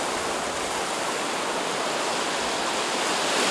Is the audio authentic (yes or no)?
yes